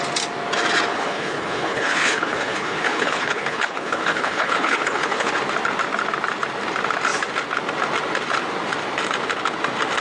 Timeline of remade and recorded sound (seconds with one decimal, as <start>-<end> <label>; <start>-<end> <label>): 0.0-0.9 recorded; 0.9-5.3 remade; 5.3-10.0 recorded